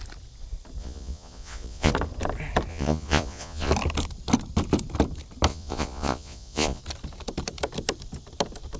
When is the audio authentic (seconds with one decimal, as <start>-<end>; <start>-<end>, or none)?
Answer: 0.0-0.8; 1.9-2.7; 3.7-5.5; 6.8-8.8